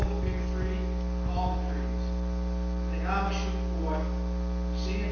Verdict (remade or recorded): recorded